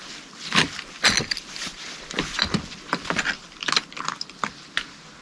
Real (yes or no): yes